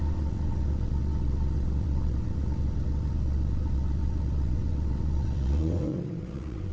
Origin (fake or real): fake